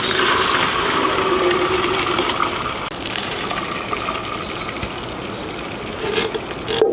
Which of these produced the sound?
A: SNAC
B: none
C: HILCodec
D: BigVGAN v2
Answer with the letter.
B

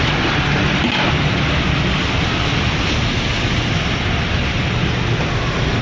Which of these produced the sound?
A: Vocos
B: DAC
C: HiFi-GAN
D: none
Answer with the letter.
D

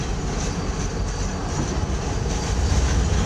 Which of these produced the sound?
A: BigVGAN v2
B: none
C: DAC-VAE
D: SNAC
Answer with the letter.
B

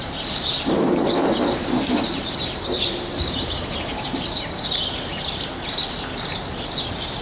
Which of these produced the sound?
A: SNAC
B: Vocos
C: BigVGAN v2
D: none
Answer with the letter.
C